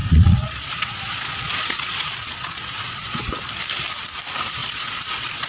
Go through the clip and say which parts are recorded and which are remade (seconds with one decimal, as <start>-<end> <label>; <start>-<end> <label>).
0.0-3.3 remade; 3.3-4.6 recorded; 4.6-5.5 remade